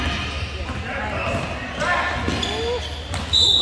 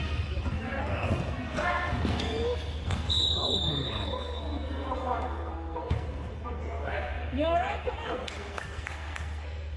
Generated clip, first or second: second